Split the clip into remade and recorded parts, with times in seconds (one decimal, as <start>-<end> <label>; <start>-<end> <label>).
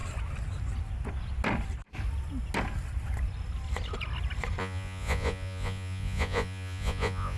0.0-4.6 recorded; 4.6-7.4 remade